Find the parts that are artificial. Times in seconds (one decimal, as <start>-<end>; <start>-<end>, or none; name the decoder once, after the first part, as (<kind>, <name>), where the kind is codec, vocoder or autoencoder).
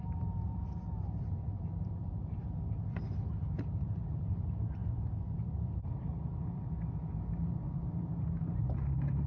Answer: 0.0-2.4 (vocoder, BigVGAN v2); 3.7-9.3